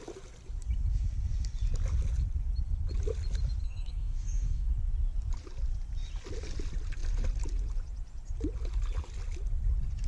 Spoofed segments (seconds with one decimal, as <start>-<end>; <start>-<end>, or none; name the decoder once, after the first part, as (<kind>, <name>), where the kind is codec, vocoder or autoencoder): 3.6-4.7 (codec, SNAC)